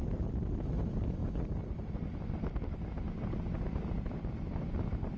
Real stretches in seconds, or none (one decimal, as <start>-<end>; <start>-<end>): 0.0-5.2